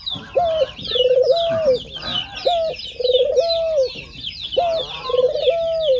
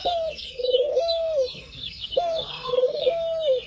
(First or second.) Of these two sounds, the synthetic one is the second